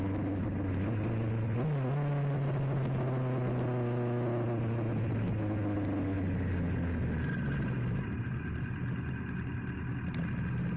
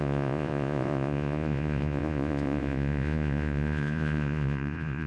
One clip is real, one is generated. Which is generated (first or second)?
second